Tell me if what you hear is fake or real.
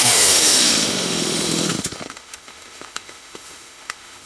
fake